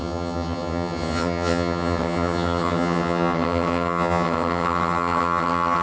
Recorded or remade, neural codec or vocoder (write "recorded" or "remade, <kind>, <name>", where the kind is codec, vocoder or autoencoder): remade, vocoder, HiFi-GAN